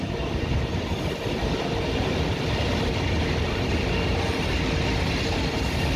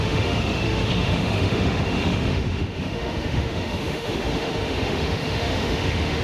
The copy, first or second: second